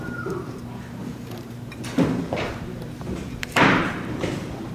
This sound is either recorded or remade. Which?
remade